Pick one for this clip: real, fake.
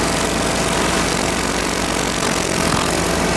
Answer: real